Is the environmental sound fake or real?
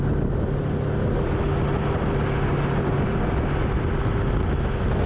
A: real